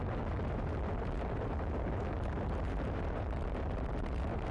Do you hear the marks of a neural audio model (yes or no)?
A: yes